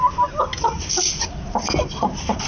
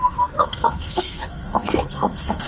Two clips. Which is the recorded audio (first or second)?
first